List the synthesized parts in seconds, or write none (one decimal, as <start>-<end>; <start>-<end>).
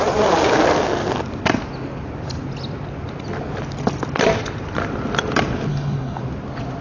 5.7-6.2